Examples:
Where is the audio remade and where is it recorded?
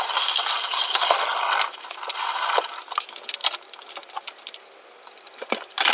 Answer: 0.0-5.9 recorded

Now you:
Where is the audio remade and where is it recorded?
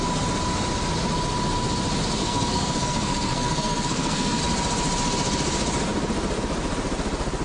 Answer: 0.0-2.2 recorded; 2.2-4.4 remade; 4.4-7.4 recorded